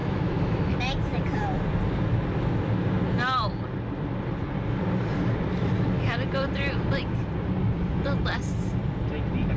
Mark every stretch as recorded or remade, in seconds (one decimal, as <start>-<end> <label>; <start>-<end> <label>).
0.0-0.7 remade; 0.7-9.6 recorded